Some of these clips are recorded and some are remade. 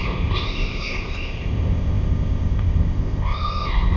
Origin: remade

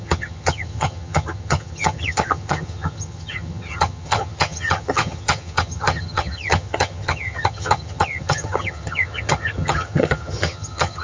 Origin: remade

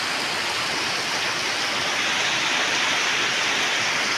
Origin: recorded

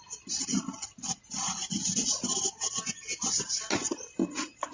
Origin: recorded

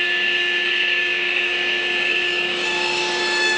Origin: remade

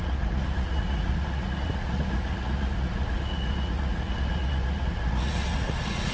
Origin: remade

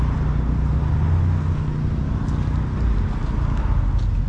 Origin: recorded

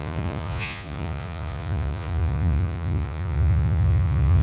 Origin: remade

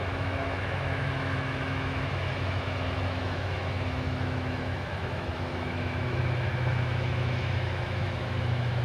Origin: remade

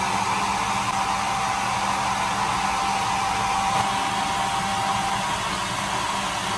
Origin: recorded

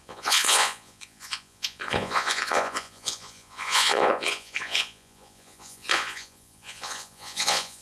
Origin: remade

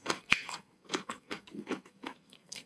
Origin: remade